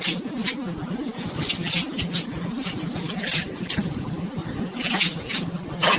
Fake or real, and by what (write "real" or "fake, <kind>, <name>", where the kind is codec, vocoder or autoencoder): real